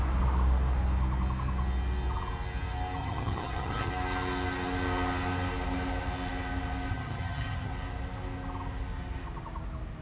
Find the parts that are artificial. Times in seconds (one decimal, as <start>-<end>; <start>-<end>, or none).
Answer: 3.0-3.9; 6.9-7.7